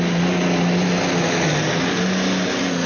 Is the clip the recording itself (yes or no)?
yes